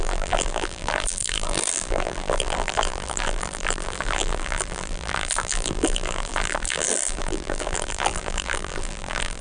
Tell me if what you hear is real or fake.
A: fake